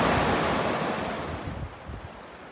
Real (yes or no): yes